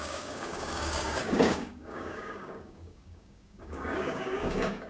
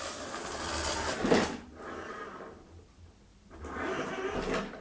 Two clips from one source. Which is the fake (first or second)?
first